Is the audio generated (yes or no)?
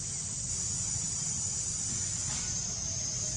no